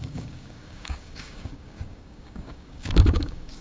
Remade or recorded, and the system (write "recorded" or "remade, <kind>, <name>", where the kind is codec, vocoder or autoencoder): remade, codec, DAC